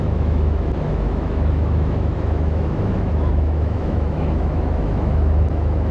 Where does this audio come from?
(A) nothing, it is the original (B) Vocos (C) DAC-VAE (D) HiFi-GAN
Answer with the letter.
C